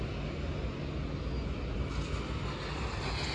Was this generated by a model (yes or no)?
no